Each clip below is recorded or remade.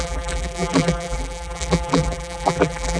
remade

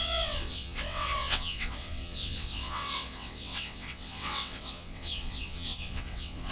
remade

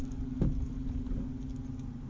recorded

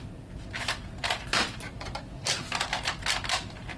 recorded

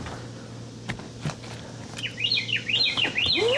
recorded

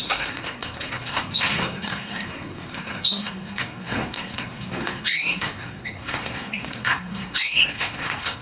remade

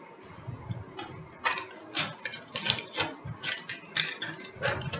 recorded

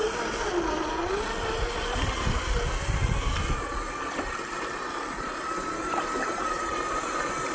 recorded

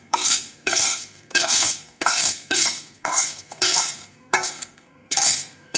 remade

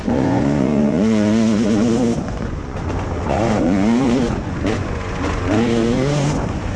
remade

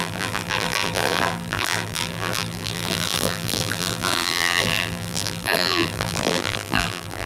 remade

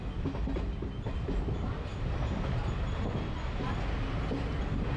recorded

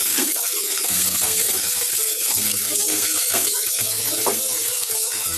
remade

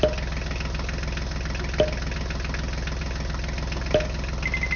recorded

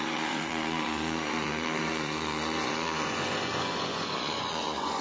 remade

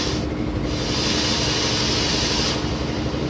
recorded